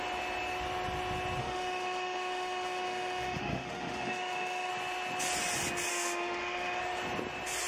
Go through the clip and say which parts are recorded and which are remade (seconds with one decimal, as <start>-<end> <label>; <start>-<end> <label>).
0.0-1.4 recorded; 1.4-4.7 remade; 4.7-5.9 recorded; 5.9-6.8 remade; 6.8-7.7 recorded